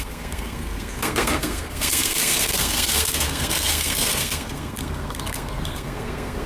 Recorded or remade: remade